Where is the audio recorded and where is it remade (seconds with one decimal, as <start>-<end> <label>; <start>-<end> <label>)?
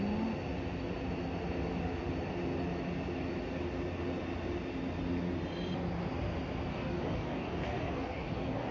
0.0-6.7 recorded; 6.7-8.7 remade